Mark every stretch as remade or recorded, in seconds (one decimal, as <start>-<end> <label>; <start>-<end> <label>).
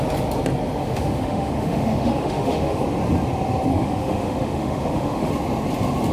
0.0-0.8 recorded; 0.8-2.8 remade; 2.8-3.7 recorded; 3.7-5.3 remade; 5.3-6.1 recorded